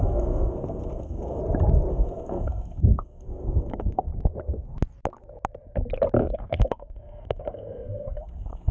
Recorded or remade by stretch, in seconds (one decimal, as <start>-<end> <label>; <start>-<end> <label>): 0.0-1.4 remade; 1.4-1.9 recorded; 1.9-4.1 remade; 4.1-6.2 recorded; 6.2-8.7 remade